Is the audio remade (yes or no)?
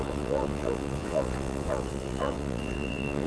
yes